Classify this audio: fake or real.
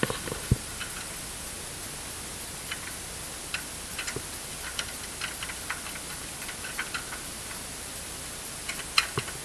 real